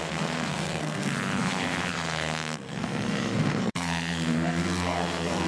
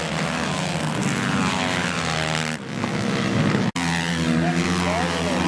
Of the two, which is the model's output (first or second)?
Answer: first